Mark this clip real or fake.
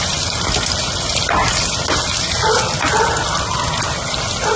real